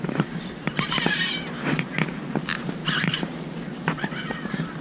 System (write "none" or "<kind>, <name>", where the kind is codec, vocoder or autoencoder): vocoder, BigVGAN v2